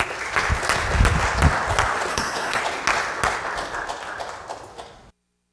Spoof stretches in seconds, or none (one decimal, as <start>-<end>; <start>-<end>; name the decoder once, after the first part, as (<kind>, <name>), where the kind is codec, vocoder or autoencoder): 2.1-2.6 (codec, SNAC)